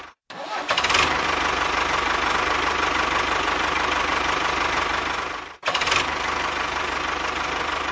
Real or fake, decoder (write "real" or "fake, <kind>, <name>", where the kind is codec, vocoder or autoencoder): real